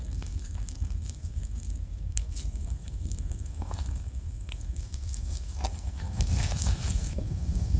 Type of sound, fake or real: fake